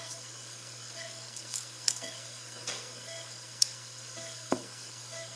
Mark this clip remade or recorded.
remade